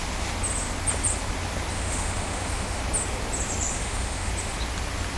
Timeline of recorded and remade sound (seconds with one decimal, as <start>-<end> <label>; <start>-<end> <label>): 0.0-1.7 recorded; 1.7-2.8 remade; 2.8-3.7 recorded; 3.7-4.3 remade; 4.3-5.2 recorded